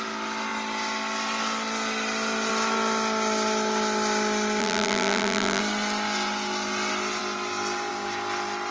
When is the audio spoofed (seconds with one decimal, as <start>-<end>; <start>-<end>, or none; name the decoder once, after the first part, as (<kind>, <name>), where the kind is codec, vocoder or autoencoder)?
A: 4.6-5.6 (vocoder, BigVGAN v2)